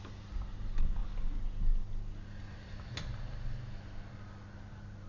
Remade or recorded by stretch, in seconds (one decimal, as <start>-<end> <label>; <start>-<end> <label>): 0.0-5.1 recorded